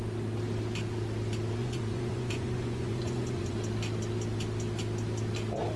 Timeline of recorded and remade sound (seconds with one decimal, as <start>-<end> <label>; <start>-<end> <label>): 0.0-1.6 recorded; 1.6-3.6 remade; 3.6-5.8 recorded